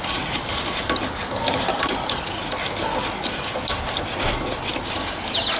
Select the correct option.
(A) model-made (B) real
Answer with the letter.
B